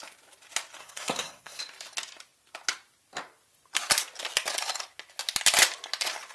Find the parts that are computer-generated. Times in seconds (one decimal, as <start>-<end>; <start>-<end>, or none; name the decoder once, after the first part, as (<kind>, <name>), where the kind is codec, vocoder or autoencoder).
0.8-1.6 (codec, SNAC)